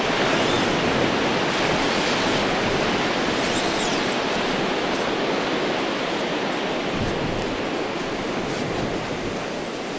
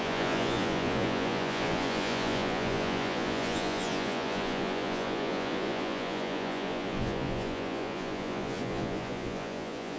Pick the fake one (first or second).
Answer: second